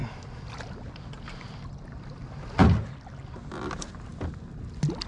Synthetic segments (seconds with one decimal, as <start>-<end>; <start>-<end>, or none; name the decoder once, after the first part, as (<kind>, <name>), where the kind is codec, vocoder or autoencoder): none